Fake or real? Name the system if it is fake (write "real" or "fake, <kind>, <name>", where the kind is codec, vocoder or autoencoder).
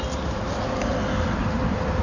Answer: real